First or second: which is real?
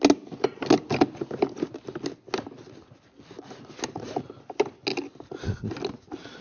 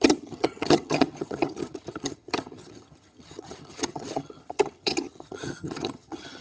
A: first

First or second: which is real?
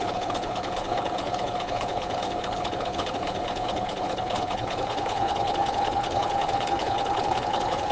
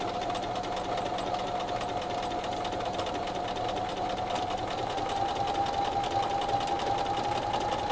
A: second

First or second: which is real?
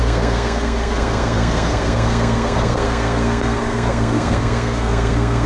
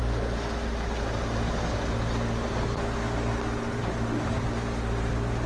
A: second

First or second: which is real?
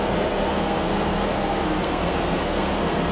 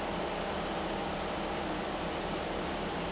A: second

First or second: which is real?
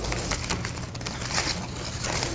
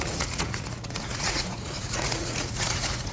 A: first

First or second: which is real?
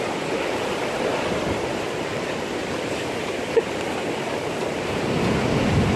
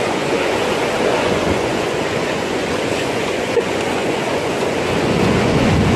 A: first